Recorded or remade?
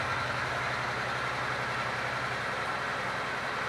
recorded